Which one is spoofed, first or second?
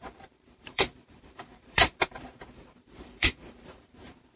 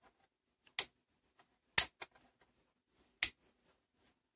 first